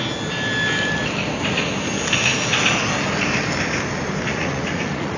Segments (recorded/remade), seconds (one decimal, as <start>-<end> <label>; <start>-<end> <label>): 0.0-4.3 recorded; 4.3-5.2 remade